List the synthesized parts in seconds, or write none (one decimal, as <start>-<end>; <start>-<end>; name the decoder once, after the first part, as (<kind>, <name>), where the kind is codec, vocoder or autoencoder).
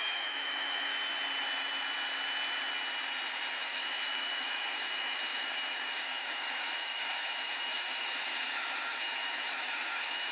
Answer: 0.0-0.9 (autoencoder, DAC-VAE); 3.6-10.3